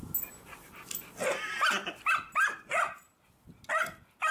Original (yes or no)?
yes